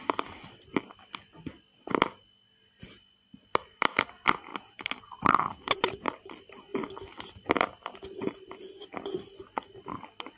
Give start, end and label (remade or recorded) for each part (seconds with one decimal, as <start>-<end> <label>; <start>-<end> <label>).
0.0-4.5 recorded; 4.5-6.3 remade; 6.3-10.4 recorded